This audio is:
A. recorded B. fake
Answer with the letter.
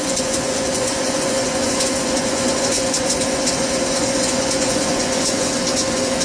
B